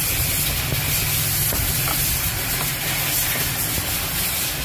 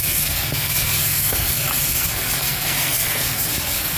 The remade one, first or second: second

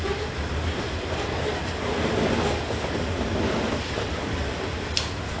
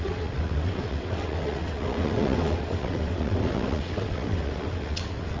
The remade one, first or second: second